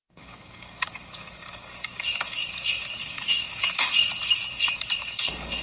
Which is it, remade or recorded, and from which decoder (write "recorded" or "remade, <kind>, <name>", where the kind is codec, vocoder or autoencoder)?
remade, codec, DAC